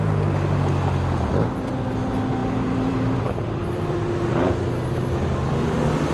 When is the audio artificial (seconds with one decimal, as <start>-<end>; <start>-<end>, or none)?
2.4-4.0